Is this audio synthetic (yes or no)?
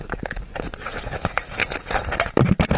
no